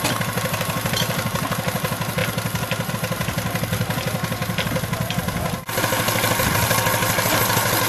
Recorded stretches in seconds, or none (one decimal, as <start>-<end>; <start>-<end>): 0.0-7.9